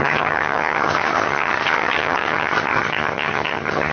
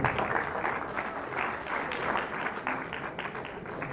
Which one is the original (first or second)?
second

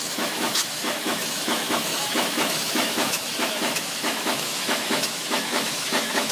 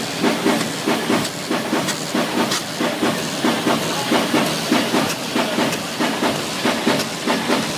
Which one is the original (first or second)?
second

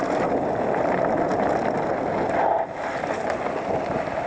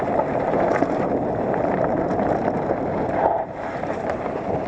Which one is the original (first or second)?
first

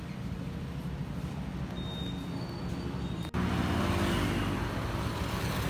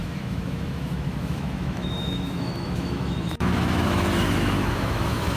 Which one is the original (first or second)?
first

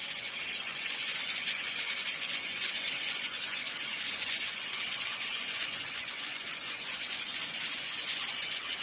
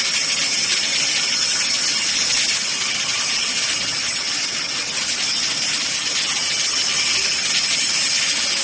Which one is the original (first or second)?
second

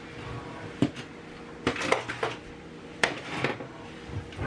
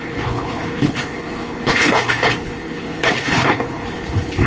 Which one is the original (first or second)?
first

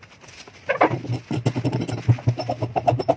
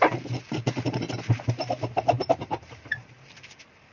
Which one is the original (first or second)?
first